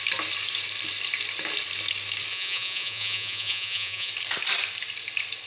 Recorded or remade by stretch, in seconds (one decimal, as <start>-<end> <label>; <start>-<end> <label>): 0.0-2.3 recorded; 2.3-4.1 remade; 4.1-5.5 recorded